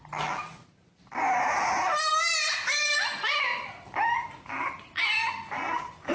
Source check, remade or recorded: recorded